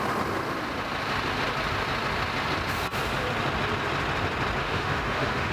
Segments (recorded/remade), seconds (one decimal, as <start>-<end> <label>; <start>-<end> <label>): 0.0-4.6 recorded; 4.6-5.5 remade